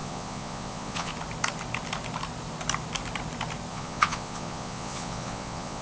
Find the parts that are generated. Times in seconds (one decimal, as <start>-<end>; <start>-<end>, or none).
0.0-1.1; 3.7-5.8